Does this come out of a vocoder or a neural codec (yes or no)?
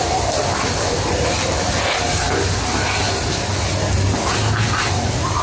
no